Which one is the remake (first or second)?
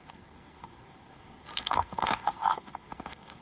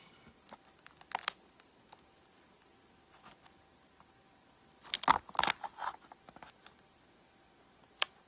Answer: first